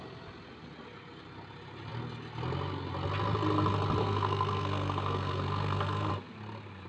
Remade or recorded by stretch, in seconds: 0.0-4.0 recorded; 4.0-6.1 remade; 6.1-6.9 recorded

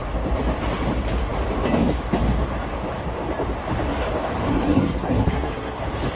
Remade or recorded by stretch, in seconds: 0.0-4.5 recorded; 4.5-5.8 remade; 5.8-6.2 recorded

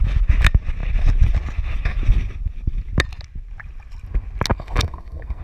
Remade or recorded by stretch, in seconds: 0.0-4.5 recorded; 4.5-5.4 remade